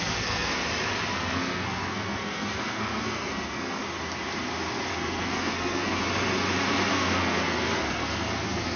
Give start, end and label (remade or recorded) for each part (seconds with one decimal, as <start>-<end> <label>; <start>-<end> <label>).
0.0-0.6 remade; 0.6-1.1 recorded; 1.1-3.8 remade; 3.8-4.9 recorded; 4.9-6.0 remade; 6.0-6.9 recorded; 6.9-8.8 remade